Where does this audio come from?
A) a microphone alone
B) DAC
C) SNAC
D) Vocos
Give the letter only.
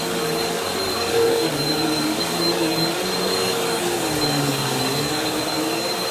B